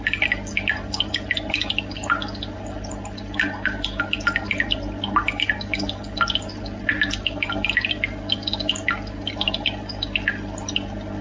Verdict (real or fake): real